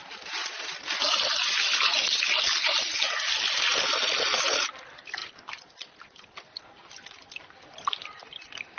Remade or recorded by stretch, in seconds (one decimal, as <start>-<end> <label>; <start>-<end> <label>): 0.0-8.8 recorded